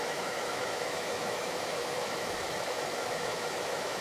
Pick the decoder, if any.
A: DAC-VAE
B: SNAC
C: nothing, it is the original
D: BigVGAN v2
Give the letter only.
A